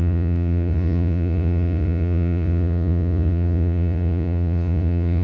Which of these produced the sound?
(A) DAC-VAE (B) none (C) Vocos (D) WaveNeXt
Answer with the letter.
C